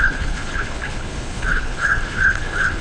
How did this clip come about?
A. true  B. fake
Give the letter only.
B